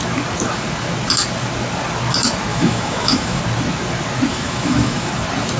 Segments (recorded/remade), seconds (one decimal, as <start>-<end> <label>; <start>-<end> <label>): 0.0-2.5 recorded; 2.5-3.4 remade; 3.4-4.3 recorded; 4.3-5.1 remade; 5.1-5.6 recorded